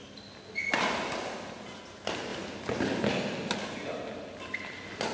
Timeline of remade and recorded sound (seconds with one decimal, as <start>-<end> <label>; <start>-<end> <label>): 0.0-5.1 recorded